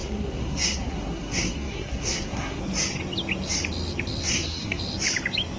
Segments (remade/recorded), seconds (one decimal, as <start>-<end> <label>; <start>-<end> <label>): 0.0-2.6 remade; 2.6-4.3 recorded; 4.3-4.8 remade; 4.8-5.6 recorded